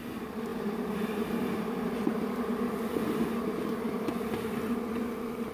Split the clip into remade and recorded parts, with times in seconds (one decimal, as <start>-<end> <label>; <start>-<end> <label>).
0.0-5.5 recorded